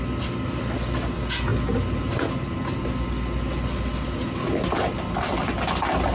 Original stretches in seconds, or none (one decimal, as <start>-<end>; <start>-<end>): 0.0-6.1